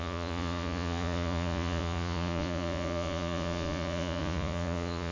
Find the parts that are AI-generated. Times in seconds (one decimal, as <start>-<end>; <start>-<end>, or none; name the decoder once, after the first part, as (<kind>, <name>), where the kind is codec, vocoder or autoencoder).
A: 0.0-5.1 (vocoder, Vocos)